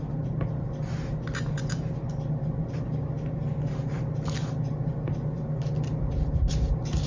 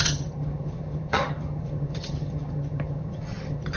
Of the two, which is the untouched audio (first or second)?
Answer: first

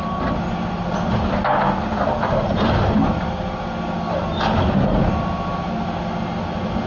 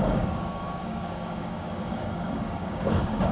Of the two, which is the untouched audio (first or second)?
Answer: first